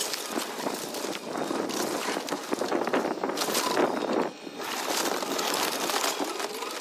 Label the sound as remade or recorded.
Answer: remade